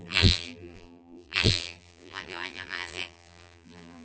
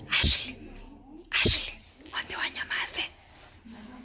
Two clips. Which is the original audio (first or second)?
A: second